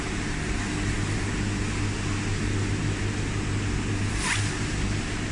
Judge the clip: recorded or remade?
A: recorded